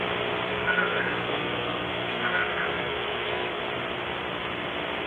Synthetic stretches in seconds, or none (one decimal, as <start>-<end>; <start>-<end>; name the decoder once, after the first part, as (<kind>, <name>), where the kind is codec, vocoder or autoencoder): 0.5-3.6 (codec, SNAC)